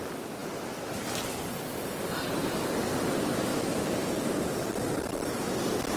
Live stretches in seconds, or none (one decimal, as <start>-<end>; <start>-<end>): 0.0-6.0